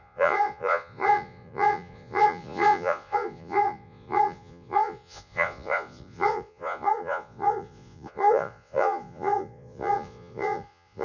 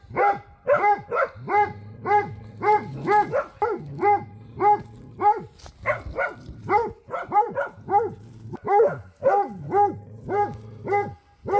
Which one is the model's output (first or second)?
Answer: first